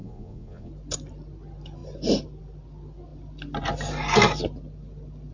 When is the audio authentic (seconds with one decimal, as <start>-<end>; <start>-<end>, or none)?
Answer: 0.7-5.3